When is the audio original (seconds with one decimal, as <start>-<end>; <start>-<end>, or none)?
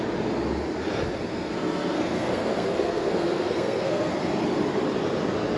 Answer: 0.0-1.3; 4.1-5.6